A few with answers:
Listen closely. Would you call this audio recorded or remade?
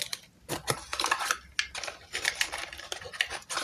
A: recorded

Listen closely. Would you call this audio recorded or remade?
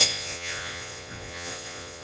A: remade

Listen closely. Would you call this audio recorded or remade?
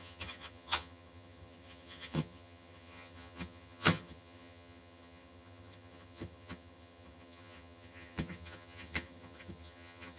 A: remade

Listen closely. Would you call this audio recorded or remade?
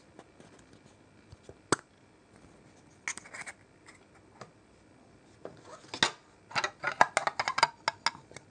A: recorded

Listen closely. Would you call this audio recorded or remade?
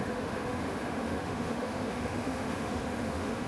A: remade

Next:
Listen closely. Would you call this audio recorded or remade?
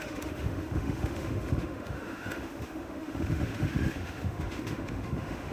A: remade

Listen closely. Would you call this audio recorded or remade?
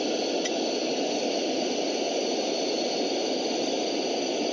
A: recorded